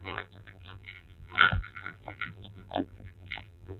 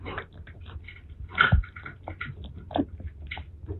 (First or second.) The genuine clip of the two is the second